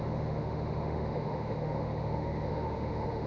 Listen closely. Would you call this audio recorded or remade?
remade